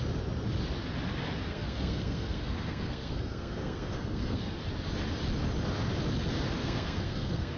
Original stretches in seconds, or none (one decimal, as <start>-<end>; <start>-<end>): 0.0-1.5; 4.6-6.6